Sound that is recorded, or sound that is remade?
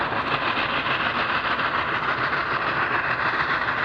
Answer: recorded